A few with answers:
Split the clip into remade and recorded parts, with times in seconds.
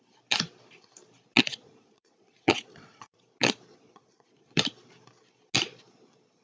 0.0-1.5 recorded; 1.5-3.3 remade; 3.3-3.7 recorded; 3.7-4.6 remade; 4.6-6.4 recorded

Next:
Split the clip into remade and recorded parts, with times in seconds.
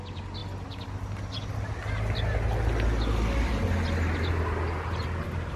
0.0-5.6 recorded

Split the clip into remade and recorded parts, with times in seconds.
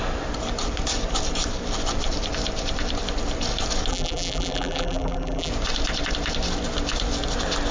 0.0-3.9 recorded; 3.9-5.5 remade; 5.5-7.7 recorded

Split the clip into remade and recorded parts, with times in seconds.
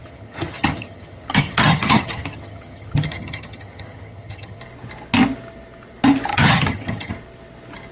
0.0-4.6 remade; 4.6-6.3 recorded; 6.3-7.1 remade; 7.1-7.9 recorded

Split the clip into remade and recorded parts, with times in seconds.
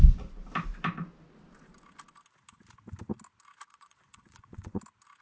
0.0-3.7 recorded; 3.7-4.8 remade; 4.8-5.2 recorded